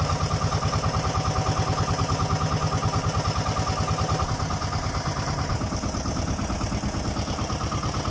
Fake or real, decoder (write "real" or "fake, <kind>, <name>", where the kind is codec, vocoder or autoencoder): real